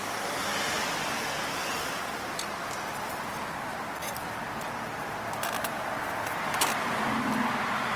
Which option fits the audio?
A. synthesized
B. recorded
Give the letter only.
B